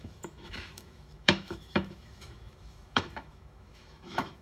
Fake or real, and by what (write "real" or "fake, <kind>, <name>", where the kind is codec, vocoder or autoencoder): fake, autoencoder, DAC-VAE